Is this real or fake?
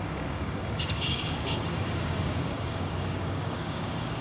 fake